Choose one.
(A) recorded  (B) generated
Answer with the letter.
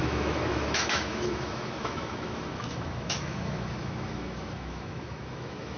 B